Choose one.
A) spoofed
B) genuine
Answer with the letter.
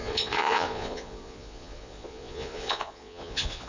A